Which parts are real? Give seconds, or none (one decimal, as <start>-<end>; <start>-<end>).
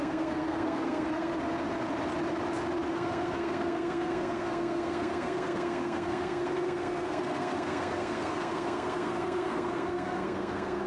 1.3-2.9